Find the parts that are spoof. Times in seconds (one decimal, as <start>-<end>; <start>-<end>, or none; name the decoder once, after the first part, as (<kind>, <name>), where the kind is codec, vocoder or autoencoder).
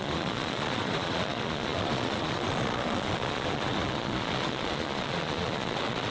0.0-6.1 (vocoder, Vocos)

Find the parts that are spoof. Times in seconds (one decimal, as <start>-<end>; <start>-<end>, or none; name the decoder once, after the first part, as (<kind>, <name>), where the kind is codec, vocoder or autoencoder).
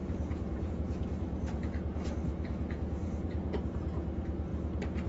0.0-4.5 (vocoder, Vocos)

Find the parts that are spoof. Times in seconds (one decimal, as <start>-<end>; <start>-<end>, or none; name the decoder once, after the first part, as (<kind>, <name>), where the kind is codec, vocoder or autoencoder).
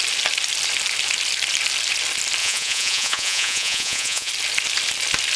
2.4-4.3 (vocoder, Vocos)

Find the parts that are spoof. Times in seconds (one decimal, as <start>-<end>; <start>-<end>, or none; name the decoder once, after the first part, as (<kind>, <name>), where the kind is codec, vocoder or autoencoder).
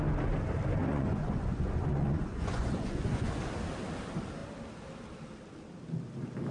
0.9-3.3 (vocoder, Vocos)